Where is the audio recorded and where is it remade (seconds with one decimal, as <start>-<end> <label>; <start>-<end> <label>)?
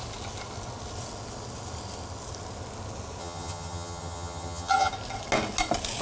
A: 0.0-3.2 recorded; 3.2-4.9 remade; 4.9-6.0 recorded